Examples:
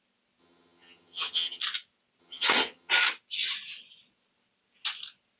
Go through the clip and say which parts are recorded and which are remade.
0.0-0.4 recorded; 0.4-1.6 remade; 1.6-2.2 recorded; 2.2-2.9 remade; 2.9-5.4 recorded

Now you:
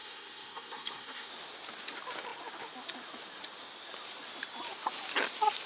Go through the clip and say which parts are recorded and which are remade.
0.0-1.3 remade; 1.3-5.7 recorded

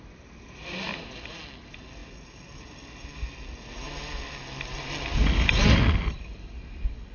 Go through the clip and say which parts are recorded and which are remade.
0.0-7.1 recorded

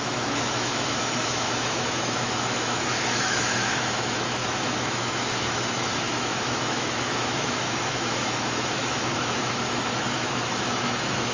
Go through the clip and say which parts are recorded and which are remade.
0.0-11.3 remade

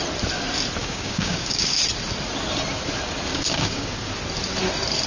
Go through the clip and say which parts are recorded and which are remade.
0.0-0.8 recorded; 0.8-1.8 remade; 1.8-3.3 recorded; 3.3-4.1 remade; 4.1-5.1 recorded

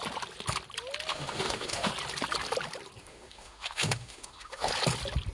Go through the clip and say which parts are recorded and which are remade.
0.0-1.1 recorded; 1.1-1.9 remade; 1.9-3.0 recorded; 3.0-4.7 remade; 4.7-5.3 recorded